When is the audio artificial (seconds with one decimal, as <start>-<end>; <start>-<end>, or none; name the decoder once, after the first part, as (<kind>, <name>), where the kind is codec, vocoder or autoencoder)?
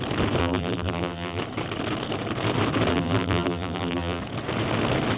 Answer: 0.4-1.4 (vocoder, BigVGAN v2); 2.9-4.2